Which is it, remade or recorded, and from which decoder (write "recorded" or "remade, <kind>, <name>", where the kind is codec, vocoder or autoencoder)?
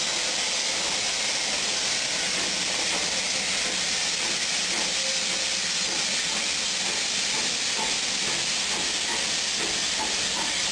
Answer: recorded